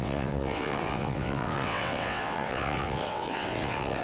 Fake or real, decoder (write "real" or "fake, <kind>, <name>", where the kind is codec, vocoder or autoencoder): fake, vocoder, WaveNeXt